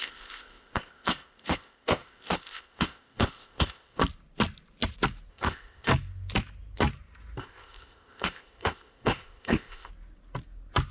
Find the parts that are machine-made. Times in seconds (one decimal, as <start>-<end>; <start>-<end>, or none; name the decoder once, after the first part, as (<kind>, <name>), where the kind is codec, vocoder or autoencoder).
0.0-4.0 (codec, ZipCodec); 5.3-5.9; 7.4-9.9